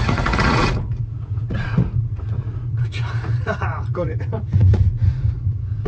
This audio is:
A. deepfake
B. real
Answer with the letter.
A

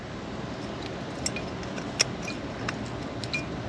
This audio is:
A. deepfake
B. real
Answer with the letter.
B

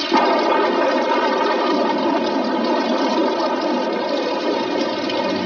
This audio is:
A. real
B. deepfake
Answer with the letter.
A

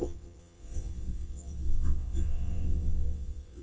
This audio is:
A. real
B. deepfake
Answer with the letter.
B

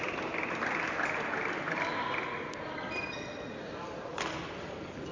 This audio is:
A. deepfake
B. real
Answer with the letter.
B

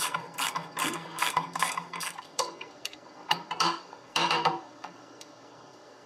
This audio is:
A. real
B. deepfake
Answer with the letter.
B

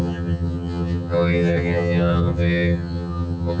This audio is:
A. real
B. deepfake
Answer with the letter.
B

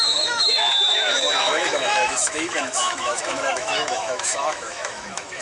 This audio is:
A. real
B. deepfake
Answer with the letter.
B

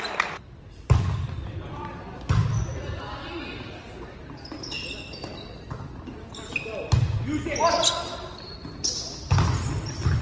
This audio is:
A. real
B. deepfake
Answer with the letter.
A